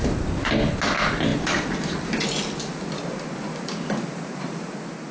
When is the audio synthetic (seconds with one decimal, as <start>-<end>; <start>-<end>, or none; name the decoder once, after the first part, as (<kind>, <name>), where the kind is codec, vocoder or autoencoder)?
none